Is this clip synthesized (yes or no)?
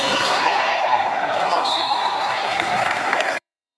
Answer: yes